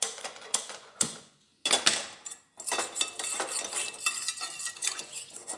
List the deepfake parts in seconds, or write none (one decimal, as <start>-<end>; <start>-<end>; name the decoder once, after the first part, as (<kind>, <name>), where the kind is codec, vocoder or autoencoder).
0.0-1.5 (vocoder, Vocos); 4.7-5.6